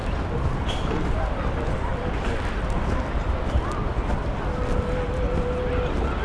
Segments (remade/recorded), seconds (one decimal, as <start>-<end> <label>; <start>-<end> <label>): 0.0-6.2 recorded